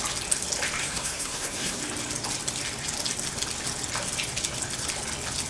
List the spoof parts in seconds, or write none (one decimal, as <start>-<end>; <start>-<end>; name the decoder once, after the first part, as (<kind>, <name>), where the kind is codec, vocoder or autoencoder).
0.8-1.8 (codec, SNAC)